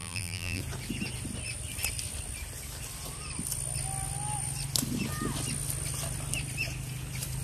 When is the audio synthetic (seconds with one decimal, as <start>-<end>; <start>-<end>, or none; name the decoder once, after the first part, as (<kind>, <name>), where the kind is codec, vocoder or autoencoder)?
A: 0.0-0.6 (vocoder, BigVGAN v2)